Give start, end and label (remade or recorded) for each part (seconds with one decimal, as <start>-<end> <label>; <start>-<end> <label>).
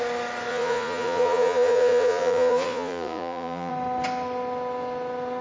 0.0-0.5 recorded; 0.5-3.7 remade; 3.7-5.4 recorded